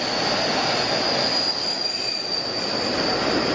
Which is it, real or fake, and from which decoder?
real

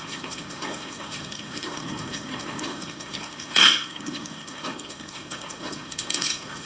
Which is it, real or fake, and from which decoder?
fake, codec, SNAC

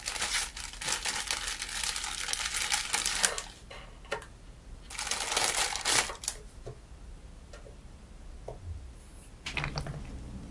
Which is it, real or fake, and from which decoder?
real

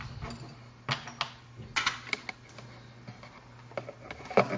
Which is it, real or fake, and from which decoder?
real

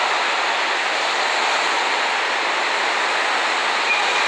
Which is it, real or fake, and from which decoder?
real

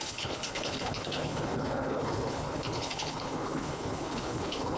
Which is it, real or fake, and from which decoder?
fake, codec, HILCodec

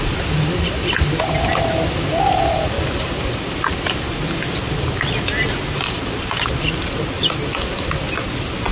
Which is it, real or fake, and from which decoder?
real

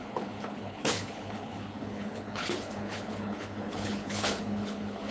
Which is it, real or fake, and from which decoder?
fake, codec, HILCodec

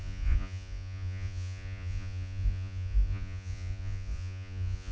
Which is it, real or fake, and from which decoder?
fake, vocoder, Vocos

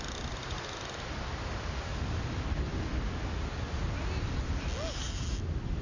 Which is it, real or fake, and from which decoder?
real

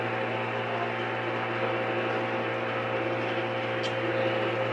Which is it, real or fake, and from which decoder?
real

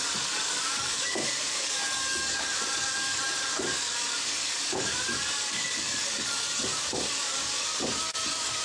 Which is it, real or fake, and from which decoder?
fake, codec, DAC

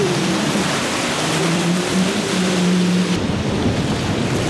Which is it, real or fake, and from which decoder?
fake, vocoder, BigVGAN v2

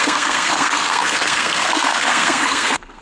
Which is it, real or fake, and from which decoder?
fake, codec, SNAC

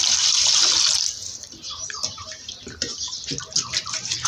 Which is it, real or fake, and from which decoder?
real